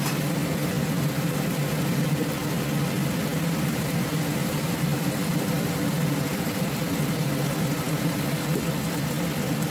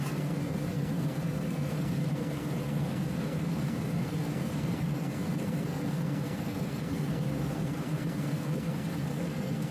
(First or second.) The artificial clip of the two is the second